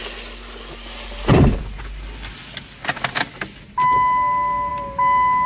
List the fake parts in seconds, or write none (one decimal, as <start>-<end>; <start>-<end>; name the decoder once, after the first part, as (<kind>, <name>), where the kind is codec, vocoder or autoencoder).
none